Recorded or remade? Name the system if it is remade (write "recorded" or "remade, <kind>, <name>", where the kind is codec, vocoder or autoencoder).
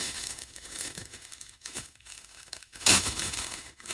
remade, autoencoder, DAC-VAE